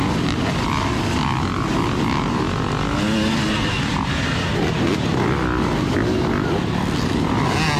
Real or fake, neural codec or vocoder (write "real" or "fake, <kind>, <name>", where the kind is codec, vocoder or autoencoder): real